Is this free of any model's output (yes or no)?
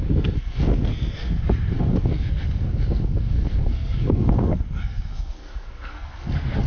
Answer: no